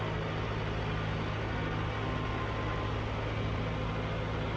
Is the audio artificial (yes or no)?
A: no